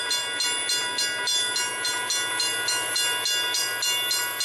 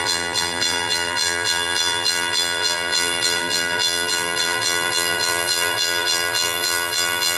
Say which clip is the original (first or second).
first